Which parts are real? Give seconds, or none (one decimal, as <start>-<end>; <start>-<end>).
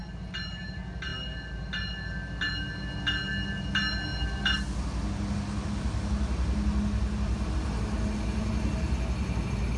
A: 0.0-9.8